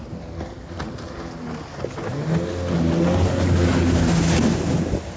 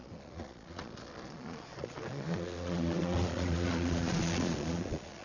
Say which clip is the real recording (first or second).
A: first